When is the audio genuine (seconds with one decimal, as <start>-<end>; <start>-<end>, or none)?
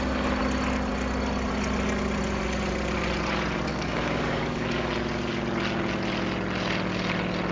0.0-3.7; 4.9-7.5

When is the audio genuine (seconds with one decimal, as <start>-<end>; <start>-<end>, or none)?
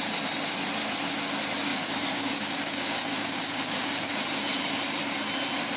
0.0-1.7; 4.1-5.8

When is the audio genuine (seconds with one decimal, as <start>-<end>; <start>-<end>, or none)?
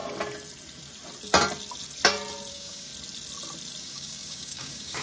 0.0-2.5; 2.9-3.8